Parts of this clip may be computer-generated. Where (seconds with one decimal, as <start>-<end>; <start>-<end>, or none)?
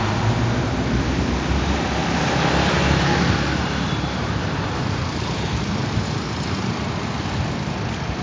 2.0-3.3; 4.8-5.9